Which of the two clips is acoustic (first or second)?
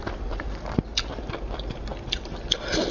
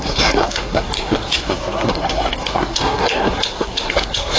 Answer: first